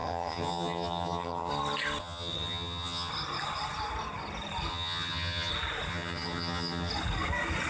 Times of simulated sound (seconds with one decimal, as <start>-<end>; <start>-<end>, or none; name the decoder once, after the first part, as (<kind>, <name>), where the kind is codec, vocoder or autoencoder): 0.0-1.5 (vocoder, HiFi-GAN); 2.0-3.1; 4.7-5.5; 5.9-6.9

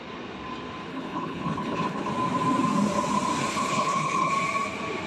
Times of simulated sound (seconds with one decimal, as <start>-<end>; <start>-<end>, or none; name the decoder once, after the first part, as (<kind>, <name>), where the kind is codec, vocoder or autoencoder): 0.9-2.1 (codec, HILCodec); 3.5-4.3

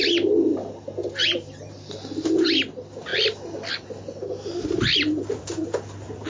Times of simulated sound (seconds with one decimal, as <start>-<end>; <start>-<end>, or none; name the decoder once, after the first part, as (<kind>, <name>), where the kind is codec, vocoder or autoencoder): none

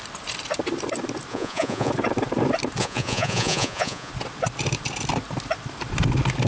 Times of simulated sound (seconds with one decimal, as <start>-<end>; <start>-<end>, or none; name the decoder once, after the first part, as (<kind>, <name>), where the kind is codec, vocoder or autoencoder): 1.3-1.9 (vocoder, Vocos); 2.8-4.1

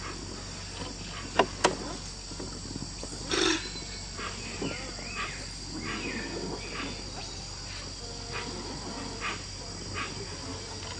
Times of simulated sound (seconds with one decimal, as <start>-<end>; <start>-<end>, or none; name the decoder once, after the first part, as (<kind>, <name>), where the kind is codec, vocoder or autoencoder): none

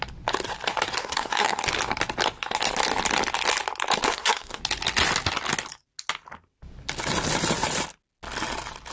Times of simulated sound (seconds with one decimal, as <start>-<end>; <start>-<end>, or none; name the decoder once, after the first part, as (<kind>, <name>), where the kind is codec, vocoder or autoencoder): 1.0-1.6 (codec, SNAC); 4.1-4.6

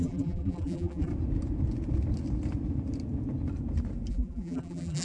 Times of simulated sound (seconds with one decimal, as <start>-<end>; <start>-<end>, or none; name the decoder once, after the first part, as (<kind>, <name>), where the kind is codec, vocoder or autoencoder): 0.0-1.1 (vocoder, BigVGAN v2); 4.1-5.0